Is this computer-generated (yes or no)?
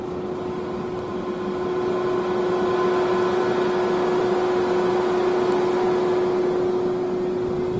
no